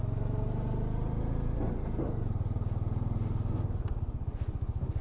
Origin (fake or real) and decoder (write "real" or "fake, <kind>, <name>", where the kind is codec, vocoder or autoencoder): real